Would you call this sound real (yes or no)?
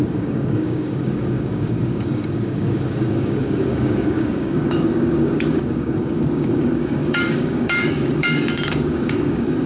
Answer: no